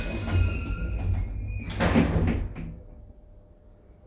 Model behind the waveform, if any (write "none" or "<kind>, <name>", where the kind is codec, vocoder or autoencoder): none